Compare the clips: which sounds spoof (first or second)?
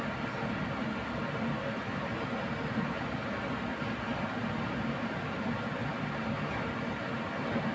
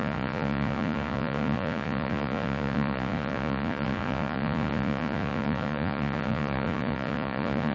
second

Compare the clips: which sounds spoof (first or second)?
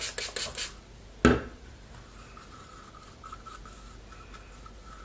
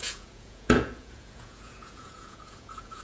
second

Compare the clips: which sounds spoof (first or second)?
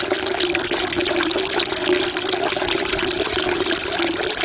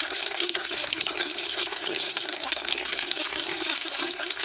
second